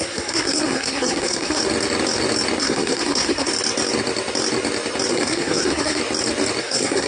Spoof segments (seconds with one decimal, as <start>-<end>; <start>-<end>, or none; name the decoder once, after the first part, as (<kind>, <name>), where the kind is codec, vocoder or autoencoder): 0.0-1.6 (codec, SNAC); 2.6-3.5; 5.1-6.0; 6.6-7.1